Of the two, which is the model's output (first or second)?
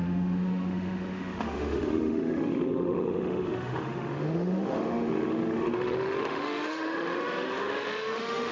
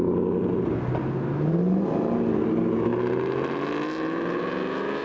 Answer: first